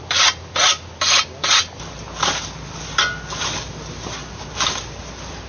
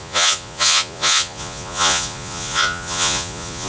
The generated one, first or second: second